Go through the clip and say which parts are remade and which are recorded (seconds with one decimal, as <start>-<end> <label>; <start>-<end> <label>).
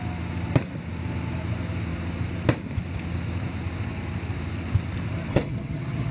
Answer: 0.0-5.3 recorded; 5.3-6.1 remade